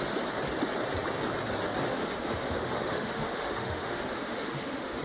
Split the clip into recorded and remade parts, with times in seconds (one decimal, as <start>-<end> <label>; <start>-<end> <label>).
0.0-1.9 recorded; 1.9-5.0 remade